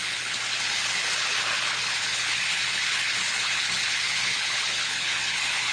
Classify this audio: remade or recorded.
remade